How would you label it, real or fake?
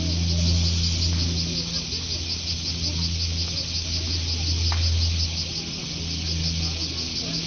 real